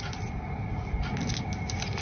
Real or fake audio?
real